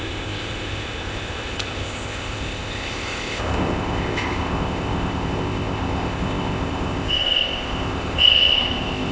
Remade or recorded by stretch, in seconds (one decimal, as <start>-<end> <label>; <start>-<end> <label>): 0.0-9.1 remade